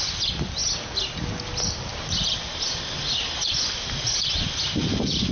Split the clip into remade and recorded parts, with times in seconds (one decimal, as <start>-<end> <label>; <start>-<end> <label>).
0.0-5.3 recorded